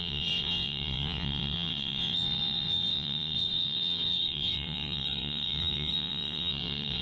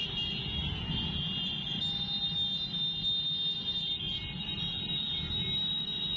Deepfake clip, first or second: first